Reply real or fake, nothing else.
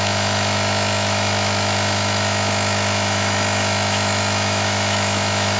fake